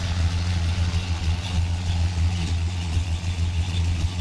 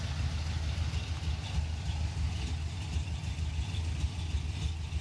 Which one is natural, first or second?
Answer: second